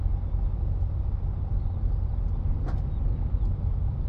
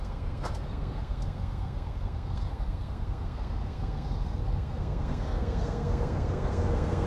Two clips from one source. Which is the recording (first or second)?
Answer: first